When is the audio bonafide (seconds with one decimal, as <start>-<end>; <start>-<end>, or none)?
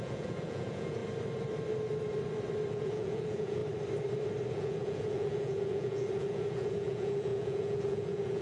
1.0-2.7; 3.6-4.5